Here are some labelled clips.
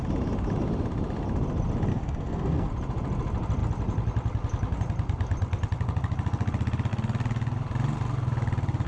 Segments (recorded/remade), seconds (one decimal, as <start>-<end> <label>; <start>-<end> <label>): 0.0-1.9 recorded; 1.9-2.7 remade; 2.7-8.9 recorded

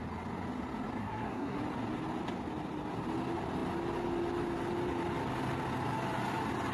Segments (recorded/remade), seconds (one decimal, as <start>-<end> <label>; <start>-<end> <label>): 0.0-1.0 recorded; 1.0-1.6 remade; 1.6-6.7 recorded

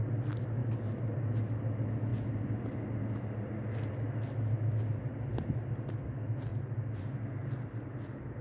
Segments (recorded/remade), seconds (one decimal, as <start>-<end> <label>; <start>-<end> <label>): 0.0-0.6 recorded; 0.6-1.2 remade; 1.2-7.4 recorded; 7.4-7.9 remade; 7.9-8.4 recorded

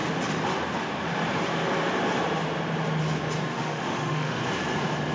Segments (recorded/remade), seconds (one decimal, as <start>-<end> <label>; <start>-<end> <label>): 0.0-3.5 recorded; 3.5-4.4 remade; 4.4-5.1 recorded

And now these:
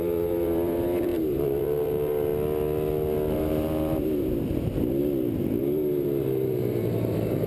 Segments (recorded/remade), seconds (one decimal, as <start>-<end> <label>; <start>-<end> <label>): 0.0-2.3 remade; 2.3-3.3 recorded; 3.3-5.0 remade; 5.0-5.6 recorded; 5.6-7.5 remade

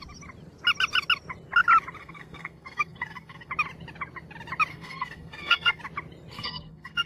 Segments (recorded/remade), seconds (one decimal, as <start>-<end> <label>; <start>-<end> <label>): 0.0-2.0 recorded; 2.0-3.5 remade; 3.5-4.7 recorded; 4.7-5.8 remade; 5.8-6.3 recorded; 6.3-7.1 remade